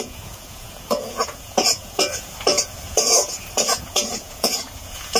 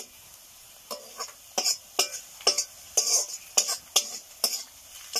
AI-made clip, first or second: first